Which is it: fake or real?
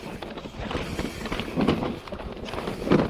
real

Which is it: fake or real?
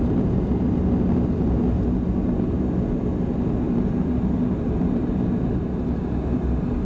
real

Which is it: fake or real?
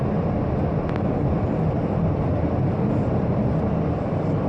real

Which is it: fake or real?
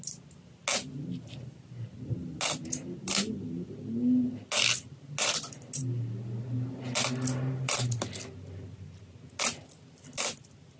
real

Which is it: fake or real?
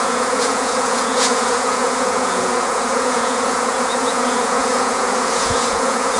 fake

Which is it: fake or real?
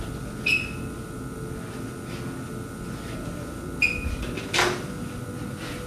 real